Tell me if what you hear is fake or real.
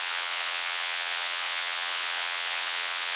fake